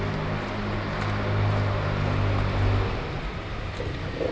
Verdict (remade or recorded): recorded